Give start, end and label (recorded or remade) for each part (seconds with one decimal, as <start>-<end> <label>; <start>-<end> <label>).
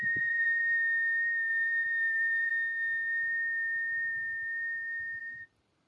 0.0-0.6 remade; 0.6-1.5 recorded; 1.5-2.5 remade; 2.5-5.2 recorded; 5.2-5.9 remade